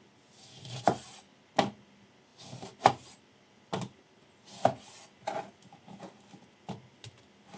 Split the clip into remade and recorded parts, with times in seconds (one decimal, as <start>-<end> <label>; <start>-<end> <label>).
0.0-7.6 recorded